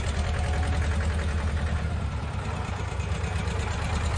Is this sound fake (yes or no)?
no